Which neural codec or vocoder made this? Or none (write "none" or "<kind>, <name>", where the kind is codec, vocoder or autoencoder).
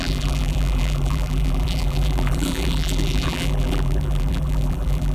vocoder, BigVGAN v2